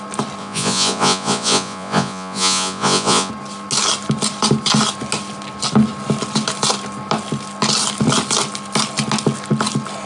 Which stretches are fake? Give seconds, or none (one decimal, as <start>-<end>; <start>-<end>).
0.4-3.3